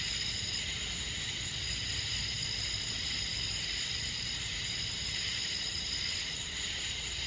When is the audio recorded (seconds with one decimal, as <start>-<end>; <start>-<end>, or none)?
0.0-7.3